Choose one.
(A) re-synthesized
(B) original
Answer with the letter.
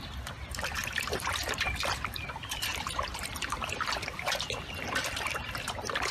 A